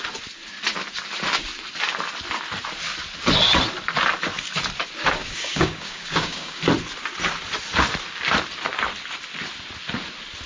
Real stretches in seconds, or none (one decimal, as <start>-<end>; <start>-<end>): 0.0-5.2; 6.6-10.5